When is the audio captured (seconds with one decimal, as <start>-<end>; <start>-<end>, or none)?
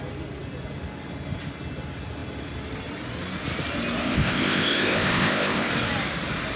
0.0-4.0; 5.7-6.6